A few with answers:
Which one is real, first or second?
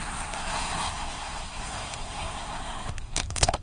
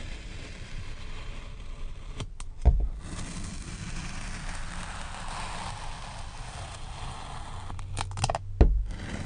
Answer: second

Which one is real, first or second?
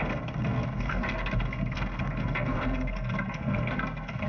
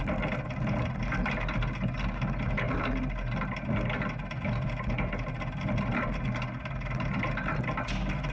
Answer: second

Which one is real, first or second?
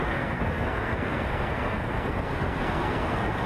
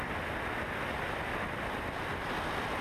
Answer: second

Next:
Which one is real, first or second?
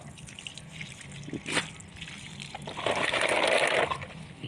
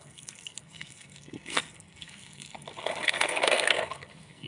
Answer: first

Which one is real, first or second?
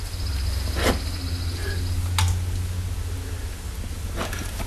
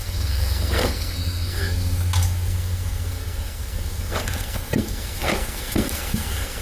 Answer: first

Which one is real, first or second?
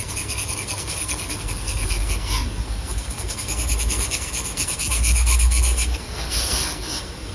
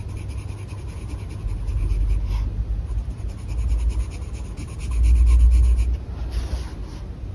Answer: second